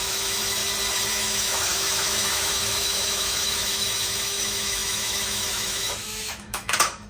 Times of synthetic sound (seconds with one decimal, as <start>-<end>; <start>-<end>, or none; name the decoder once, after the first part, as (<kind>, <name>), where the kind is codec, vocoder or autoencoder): 0.0-0.6 (autoencoder, DAC-VAE); 1.1-7.1